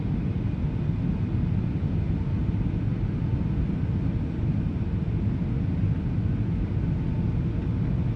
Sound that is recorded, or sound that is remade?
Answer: recorded